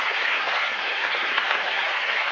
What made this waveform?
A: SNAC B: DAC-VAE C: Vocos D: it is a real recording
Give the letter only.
A